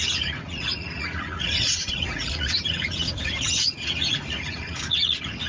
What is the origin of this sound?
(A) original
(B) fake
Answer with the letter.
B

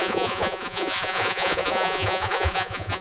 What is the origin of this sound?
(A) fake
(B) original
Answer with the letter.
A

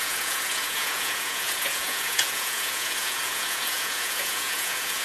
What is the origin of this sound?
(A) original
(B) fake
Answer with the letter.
B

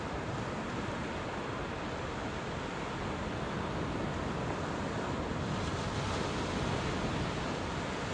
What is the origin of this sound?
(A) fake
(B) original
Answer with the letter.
B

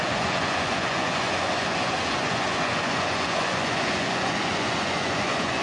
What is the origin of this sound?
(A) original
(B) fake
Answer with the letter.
B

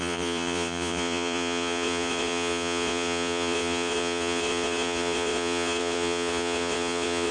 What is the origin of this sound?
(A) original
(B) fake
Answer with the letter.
B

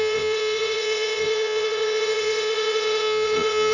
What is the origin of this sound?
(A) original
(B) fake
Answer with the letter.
B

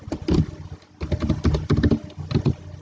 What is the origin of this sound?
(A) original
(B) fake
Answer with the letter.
A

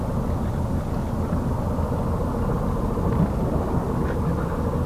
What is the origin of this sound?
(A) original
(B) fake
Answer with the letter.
A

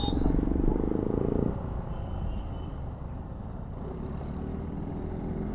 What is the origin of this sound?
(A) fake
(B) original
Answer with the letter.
B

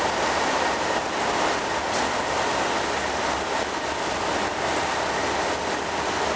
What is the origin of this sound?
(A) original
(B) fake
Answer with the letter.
A